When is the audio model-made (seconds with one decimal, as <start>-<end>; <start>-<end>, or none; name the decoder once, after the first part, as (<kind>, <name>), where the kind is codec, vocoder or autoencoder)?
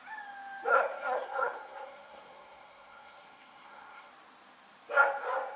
0.7-4.1 (codec, SNAC)